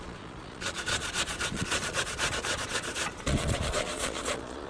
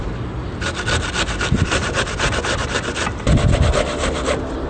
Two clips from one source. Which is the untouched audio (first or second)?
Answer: second